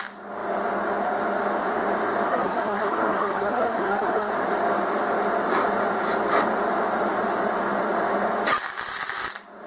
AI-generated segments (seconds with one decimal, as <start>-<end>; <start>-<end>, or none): 2.3-4.3